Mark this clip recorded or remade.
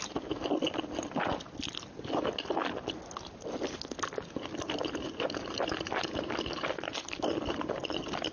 recorded